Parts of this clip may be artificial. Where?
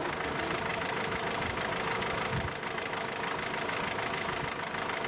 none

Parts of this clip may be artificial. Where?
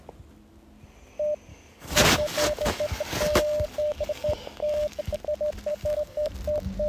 1.5-5.2 (codec, DAC); 5.7-6.3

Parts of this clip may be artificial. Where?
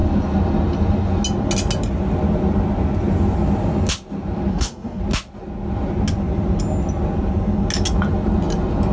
4.5-5.0 (codec, SNAC)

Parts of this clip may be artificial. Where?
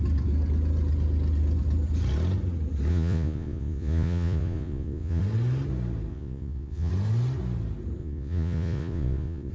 2.9-5.2 (vocoder, Vocos); 6.1-6.9; 8.0-9.5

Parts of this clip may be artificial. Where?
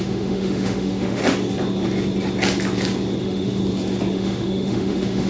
0.0-1.2 (autoencoder, DAC-VAE); 3.2-3.6; 4.1-5.3